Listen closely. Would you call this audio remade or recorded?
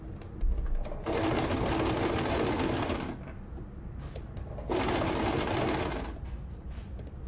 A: recorded